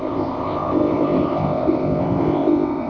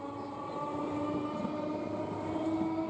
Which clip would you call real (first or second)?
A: second